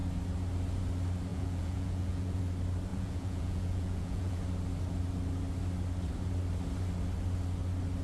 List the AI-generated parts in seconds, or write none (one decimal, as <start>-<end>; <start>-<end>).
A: 1.3-2.4; 2.9-4.4